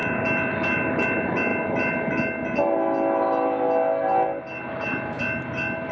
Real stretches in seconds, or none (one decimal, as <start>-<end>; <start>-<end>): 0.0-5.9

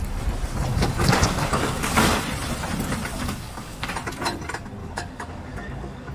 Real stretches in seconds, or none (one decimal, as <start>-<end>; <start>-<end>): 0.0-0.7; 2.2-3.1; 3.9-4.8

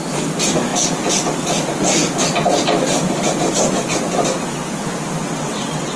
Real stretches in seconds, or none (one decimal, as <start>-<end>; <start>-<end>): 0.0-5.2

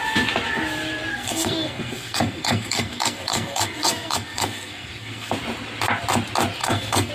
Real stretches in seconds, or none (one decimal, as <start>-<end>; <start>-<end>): 0.0-1.1; 5.3-6.6

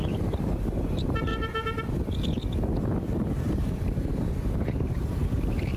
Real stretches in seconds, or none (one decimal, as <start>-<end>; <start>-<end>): 1.3-3.4

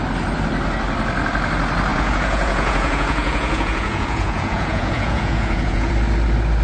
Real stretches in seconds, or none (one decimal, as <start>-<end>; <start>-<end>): 0.0-1.9; 5.9-6.6

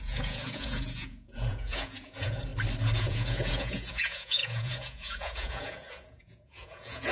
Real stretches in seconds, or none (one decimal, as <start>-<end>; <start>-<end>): 2.5-3.0